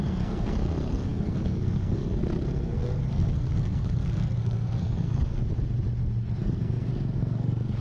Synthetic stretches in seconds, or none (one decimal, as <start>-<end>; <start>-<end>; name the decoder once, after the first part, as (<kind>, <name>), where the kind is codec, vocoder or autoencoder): 0.0-5.4 (codec, SNAC); 6.4-7.8